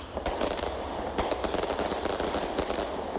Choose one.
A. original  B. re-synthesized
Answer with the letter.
A